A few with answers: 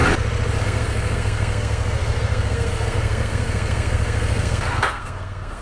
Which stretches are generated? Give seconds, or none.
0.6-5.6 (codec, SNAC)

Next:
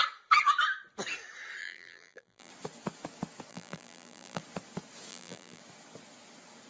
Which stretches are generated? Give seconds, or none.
1.6-2.5 (vocoder, BigVGAN v2); 3.5-4.4; 5.1-5.6

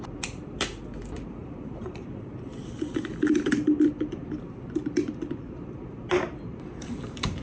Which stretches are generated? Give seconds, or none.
1.4-2.6 (vocoder, BigVGAN v2); 6.5-7.4

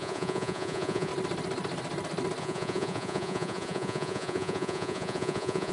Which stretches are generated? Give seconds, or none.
0.0-1.1 (vocoder, Vocos); 2.4-5.7

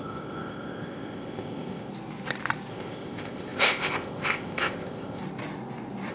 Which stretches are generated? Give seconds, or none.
0.0-1.9 (codec, ZipCodec); 2.7-5.2